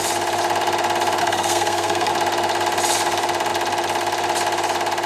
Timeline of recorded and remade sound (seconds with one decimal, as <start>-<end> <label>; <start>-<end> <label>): 0.0-1.2 recorded; 1.2-2.1 remade; 2.1-5.1 recorded